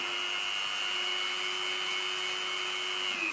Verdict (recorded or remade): recorded